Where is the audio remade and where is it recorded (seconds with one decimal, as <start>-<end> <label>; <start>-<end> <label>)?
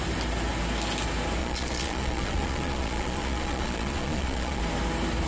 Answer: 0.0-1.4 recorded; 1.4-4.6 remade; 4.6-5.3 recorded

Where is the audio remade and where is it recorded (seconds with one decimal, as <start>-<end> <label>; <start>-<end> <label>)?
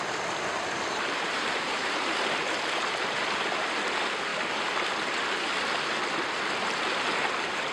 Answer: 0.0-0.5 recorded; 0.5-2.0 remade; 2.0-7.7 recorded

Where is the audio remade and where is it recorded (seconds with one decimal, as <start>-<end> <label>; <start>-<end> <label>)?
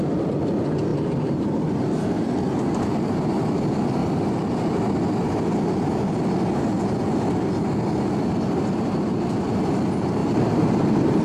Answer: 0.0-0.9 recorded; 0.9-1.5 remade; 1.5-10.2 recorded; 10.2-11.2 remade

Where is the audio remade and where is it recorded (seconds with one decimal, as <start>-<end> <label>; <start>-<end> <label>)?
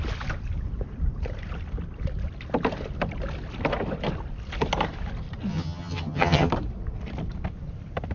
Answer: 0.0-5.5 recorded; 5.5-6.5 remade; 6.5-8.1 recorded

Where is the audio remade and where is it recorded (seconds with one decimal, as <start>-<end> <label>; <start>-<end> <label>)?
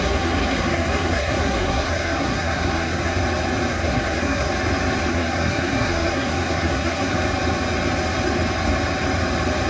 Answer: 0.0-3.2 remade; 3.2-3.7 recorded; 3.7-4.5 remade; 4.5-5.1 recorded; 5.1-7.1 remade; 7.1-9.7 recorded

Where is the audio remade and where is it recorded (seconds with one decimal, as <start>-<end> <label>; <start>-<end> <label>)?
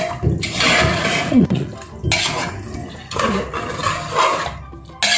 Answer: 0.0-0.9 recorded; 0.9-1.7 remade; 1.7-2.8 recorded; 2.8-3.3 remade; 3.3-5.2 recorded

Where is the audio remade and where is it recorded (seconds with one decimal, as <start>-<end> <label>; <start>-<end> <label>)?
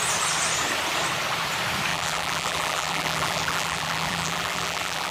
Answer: 0.0-1.9 recorded; 1.9-5.1 remade